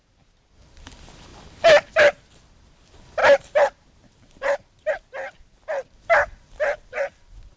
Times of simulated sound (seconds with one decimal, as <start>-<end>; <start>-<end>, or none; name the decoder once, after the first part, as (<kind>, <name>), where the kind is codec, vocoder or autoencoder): none